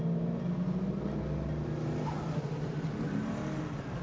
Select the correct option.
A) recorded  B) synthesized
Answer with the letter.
A